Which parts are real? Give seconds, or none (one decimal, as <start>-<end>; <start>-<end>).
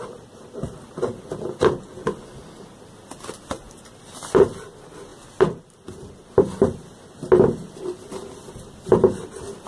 0.0-8.1; 9.2-9.7